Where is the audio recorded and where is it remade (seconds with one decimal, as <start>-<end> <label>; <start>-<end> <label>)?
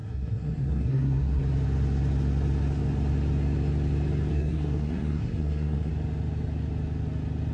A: 0.0-1.4 remade; 1.4-4.3 recorded; 4.3-5.9 remade; 5.9-7.5 recorded